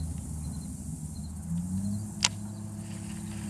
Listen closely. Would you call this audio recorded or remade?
recorded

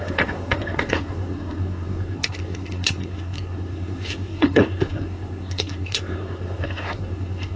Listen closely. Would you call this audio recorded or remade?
remade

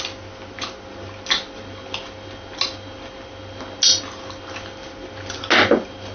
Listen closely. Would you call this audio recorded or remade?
recorded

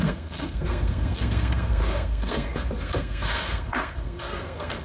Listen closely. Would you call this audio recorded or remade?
remade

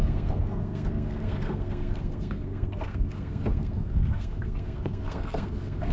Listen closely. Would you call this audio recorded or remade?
remade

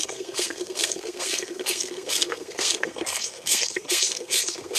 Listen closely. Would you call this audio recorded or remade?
remade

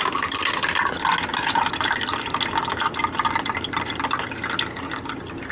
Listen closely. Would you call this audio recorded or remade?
recorded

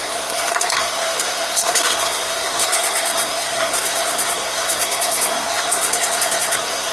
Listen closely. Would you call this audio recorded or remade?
remade